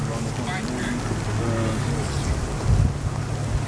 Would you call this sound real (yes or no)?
yes